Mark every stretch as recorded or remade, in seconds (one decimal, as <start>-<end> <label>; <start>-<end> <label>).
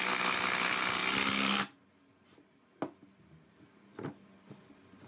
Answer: 0.0-5.1 recorded